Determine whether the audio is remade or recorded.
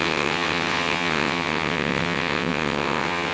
remade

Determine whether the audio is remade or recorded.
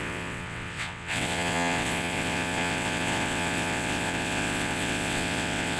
remade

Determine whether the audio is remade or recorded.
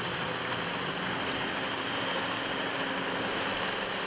recorded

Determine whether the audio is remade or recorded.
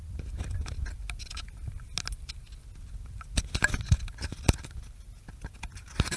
recorded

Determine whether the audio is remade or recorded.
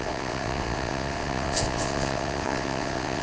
remade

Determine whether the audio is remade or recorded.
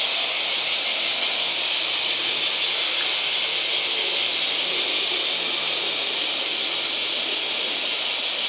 recorded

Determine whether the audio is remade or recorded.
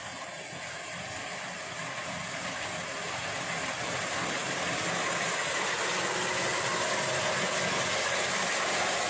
recorded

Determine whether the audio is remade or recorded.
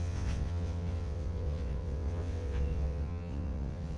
remade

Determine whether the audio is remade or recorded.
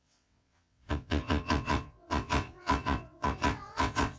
remade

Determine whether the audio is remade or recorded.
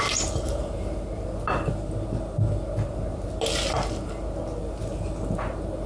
recorded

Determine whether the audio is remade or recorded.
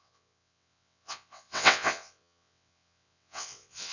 remade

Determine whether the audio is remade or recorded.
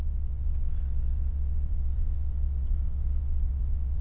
remade